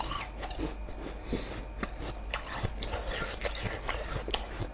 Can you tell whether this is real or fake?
real